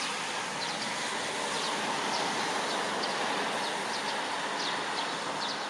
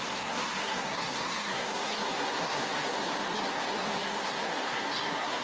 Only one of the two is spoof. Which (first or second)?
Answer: second